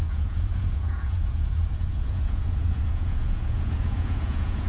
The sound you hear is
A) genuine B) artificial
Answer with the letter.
B